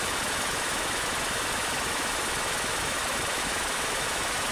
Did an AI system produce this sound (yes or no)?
yes